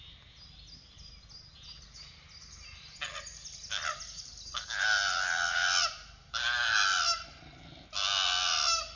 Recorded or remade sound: recorded